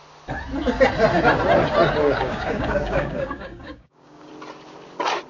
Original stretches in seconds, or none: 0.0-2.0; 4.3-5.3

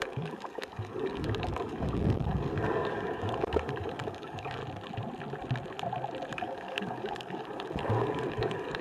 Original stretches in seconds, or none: 4.6-6.3

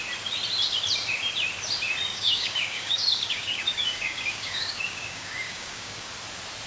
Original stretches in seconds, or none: 0.0-2.1; 6.1-6.7

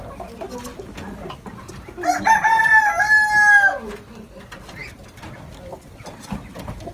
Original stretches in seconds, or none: 0.0-6.9